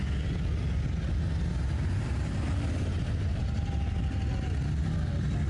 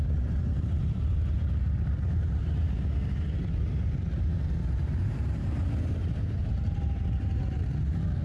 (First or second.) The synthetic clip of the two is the second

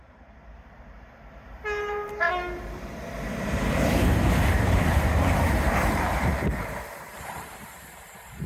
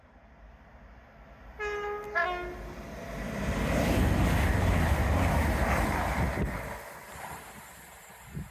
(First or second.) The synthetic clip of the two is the first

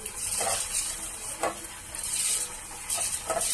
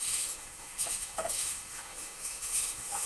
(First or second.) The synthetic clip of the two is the second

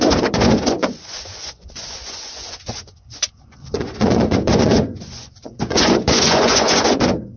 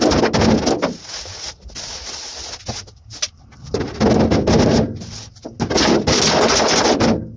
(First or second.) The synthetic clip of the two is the first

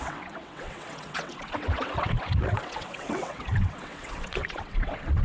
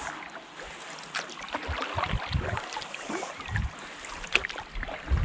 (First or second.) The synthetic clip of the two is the first